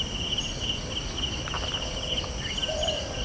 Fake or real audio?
real